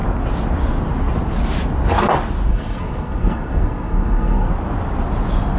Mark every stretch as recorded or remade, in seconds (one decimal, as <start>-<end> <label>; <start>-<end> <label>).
0.0-2.5 recorded; 2.5-4.5 remade; 4.5-5.6 recorded